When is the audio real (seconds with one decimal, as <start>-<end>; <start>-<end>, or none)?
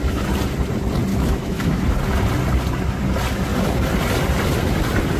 0.0-1.1; 1.8-5.2